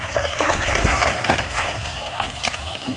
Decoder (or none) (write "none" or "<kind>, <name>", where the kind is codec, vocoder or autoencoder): codec, SNAC